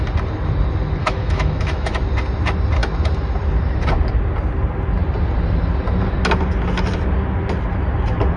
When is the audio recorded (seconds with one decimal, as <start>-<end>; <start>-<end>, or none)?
0.0-1.0; 1.9-8.4